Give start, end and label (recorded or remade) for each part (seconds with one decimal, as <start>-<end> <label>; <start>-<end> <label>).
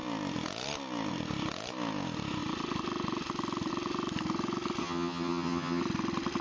0.0-4.8 recorded; 4.8-5.8 remade; 5.8-6.4 recorded